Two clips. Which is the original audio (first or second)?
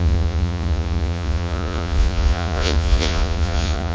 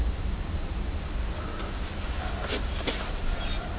second